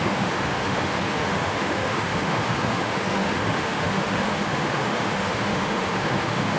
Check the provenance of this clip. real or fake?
fake